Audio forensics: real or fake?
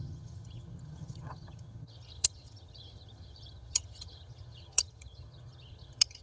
fake